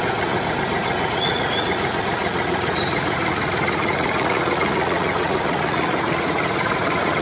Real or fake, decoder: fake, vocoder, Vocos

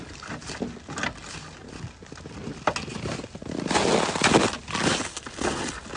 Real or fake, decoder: real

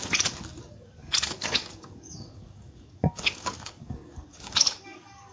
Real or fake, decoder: fake, codec, DAC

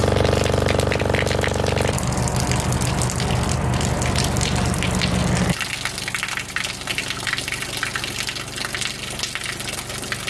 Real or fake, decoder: real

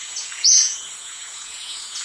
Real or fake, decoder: fake, vocoder, Vocos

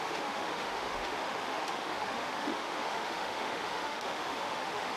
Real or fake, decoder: fake, autoencoder, DAC-VAE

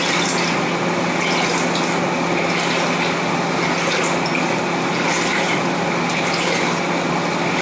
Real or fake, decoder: real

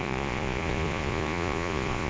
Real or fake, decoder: fake, vocoder, Vocos